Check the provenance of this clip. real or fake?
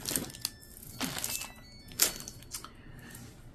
real